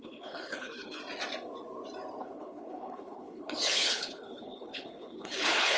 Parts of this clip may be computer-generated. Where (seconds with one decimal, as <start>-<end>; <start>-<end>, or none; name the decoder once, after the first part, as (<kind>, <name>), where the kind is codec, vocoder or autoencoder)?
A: 0.0-1.0 (codec, HILCodec); 2.2-5.8